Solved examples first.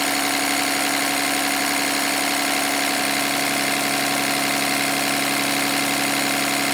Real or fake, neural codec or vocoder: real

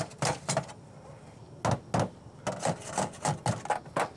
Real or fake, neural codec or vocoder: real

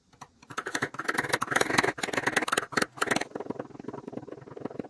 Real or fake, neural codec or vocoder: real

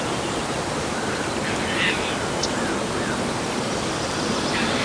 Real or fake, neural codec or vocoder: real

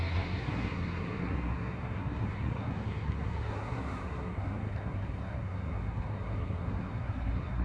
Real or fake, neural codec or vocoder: fake, codec, SNAC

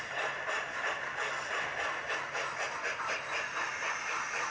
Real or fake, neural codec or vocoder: real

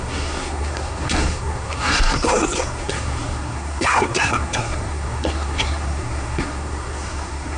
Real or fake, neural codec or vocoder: fake, codec, SNAC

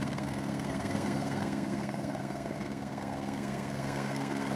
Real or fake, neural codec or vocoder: fake, codec, SNAC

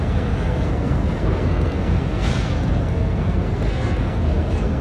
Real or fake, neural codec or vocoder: fake, codec, SNAC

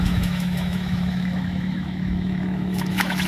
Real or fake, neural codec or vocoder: fake, autoencoder, DAC-VAE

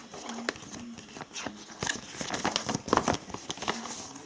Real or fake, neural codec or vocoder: real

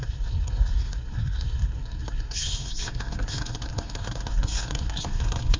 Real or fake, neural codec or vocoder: fake, codec, SNAC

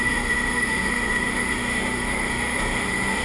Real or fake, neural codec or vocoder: fake, autoencoder, DAC-VAE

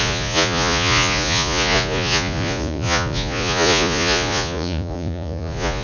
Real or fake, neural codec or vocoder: fake, vocoder, Vocos